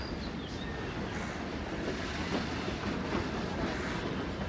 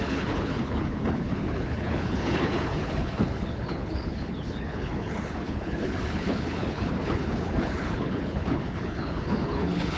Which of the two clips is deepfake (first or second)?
second